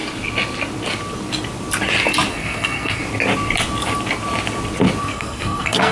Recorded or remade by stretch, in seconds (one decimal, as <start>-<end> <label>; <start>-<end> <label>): 0.0-2.3 recorded; 2.3-3.0 remade; 3.0-5.0 recorded; 5.0-5.9 remade